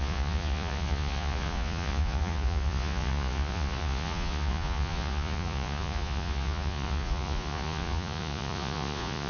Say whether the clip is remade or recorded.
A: remade